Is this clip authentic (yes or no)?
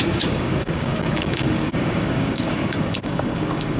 no